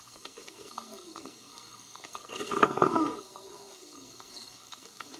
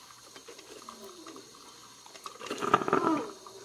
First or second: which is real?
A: second